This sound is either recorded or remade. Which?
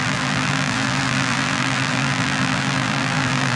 remade